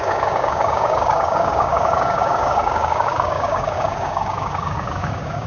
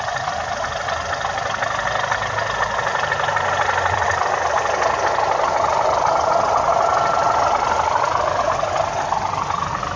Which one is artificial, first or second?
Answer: first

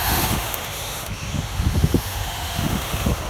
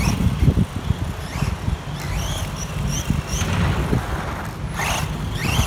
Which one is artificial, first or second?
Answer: first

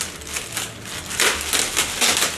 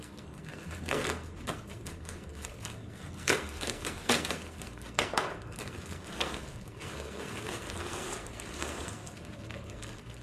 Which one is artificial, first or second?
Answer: second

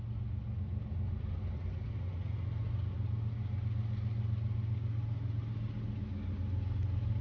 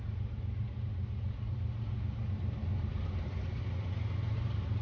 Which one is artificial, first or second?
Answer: second